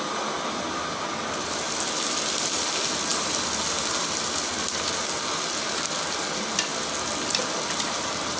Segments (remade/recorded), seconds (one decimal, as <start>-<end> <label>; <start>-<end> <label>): 0.0-8.4 recorded